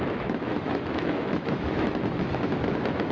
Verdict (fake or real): fake